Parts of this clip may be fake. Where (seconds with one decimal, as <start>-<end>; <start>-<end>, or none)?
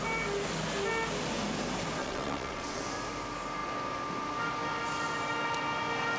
2.0-2.8